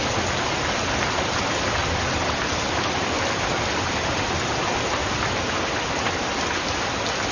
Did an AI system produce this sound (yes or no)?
no